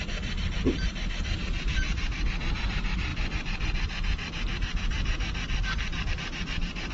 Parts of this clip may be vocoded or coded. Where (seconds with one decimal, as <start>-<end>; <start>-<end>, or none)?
0.0-3.1; 6.1-6.9